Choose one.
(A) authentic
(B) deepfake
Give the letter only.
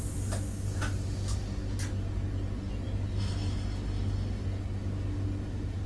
A